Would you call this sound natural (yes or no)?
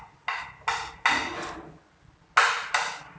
yes